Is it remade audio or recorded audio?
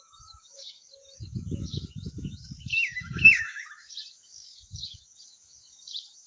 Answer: remade